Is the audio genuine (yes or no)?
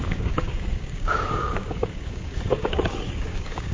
no